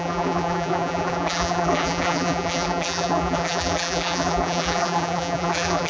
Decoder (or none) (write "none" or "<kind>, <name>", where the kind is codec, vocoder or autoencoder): vocoder, BigVGAN v2